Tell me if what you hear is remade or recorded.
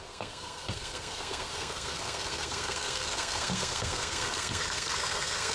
remade